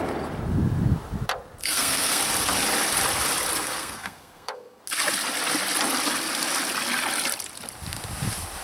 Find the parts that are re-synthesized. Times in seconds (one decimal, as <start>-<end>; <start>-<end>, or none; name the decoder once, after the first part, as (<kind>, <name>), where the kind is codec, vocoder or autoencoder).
1.6-2.2 (codec, SNAC); 3.6-4.8